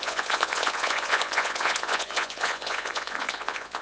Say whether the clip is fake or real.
fake